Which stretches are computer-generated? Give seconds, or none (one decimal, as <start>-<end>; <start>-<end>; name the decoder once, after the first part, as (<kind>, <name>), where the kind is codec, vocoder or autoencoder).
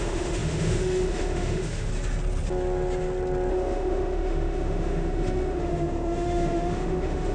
0.0-1.9 (autoencoder, DAC-VAE); 3.5-7.3